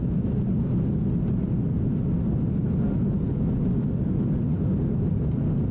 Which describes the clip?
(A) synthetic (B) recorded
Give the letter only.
B